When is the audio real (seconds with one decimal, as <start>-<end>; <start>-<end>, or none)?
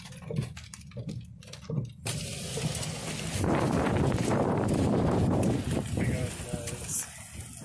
0.0-3.0; 6.3-7.6